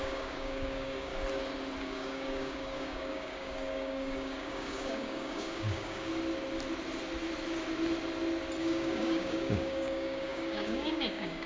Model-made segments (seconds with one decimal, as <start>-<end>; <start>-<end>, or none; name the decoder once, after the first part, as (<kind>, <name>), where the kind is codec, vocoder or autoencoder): 0.0-1.1 (codec, DAC); 1.8-6.1; 8.6-11.5